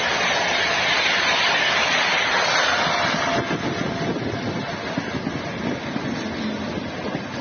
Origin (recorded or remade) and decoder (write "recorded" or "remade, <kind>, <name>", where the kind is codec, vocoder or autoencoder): recorded